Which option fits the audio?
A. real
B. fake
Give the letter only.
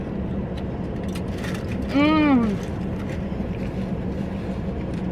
A